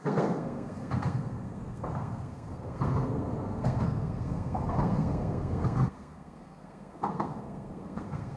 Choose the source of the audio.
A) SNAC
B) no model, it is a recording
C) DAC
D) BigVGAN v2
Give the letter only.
A